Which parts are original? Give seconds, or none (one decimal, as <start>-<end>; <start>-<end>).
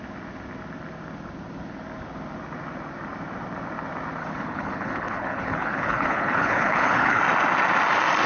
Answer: 0.0-4.2; 7.2-8.3